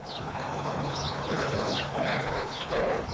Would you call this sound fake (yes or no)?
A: yes